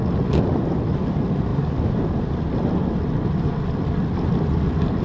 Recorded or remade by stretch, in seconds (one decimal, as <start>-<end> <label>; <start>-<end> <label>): 0.0-5.0 recorded